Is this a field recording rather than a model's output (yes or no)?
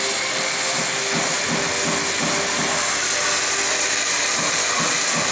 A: yes